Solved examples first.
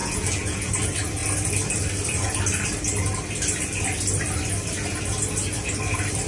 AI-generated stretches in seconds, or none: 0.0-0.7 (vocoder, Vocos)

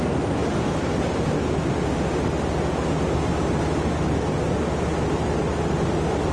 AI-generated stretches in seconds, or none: none

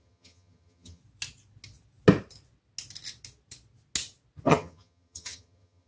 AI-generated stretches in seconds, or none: 0.0-1.0 (vocoder, HiFi-GAN); 4.5-5.9

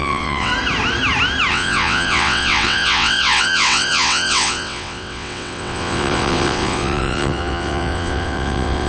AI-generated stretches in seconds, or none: 0.0-0.5 (vocoder, WaveNeXt); 1.5-8.9

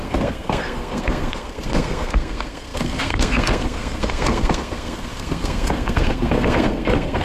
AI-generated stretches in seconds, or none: 0.0-7.2 (codec, SNAC)

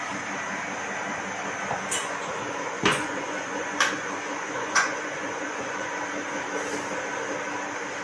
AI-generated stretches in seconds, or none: 2.0-6.0 (vocoder, Vocos)

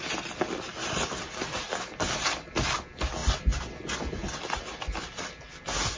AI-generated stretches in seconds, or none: none

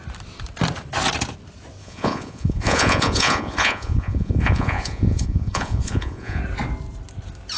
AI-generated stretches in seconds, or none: 1.8-6.4 (vocoder, Vocos)